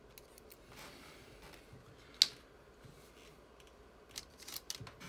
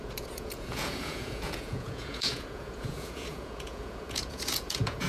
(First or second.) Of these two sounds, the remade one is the second